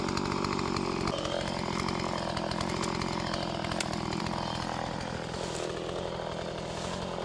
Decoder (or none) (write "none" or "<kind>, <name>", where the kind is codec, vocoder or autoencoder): none